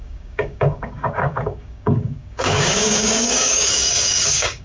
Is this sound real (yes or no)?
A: no